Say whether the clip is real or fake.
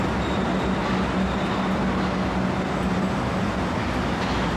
real